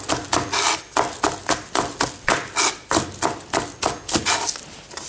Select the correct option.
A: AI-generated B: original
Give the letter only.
B